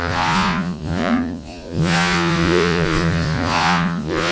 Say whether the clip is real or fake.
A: fake